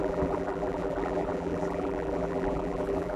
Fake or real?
fake